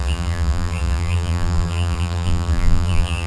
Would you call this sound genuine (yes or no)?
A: no